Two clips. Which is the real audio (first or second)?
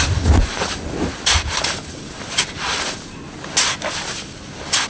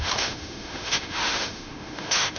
first